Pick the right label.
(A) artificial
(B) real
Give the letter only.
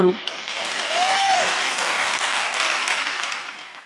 A